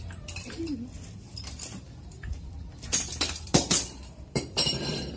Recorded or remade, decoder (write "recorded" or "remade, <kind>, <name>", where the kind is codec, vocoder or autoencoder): remade, vocoder, BigVGAN v2